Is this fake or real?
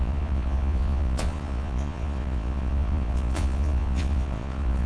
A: fake